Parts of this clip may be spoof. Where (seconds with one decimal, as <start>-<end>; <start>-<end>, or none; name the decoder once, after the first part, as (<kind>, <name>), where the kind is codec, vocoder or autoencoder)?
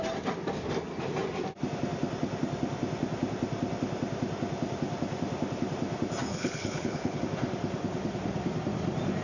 6.3-7.2 (codec, HILCodec)